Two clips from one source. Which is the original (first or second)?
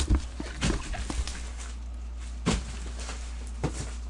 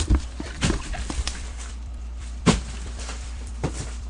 first